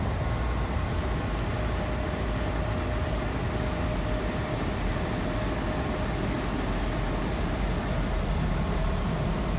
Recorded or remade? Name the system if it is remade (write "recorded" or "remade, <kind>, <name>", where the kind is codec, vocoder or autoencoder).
recorded